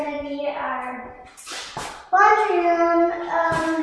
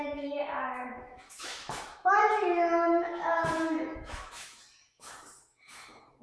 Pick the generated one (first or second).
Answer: second